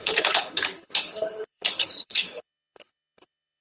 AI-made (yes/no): yes